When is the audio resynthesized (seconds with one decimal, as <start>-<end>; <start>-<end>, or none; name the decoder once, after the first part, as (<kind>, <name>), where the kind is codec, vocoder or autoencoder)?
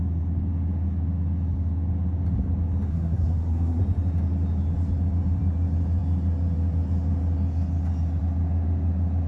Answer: 2.9-3.8 (codec, SNAC)